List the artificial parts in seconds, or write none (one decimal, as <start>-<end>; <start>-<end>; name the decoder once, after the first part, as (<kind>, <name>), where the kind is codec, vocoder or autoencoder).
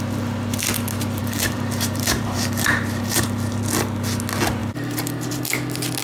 1.2-3.6 (vocoder, BigVGAN v2); 4.6-5.4